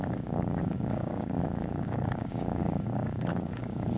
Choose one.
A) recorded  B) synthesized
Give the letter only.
B